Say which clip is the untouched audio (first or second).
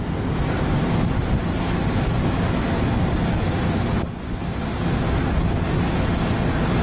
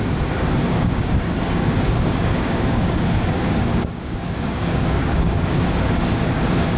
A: first